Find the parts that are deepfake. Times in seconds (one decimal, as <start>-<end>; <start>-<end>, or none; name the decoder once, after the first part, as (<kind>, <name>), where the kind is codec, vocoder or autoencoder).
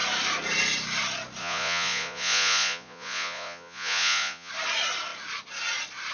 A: 1.4-4.5 (vocoder, Vocos)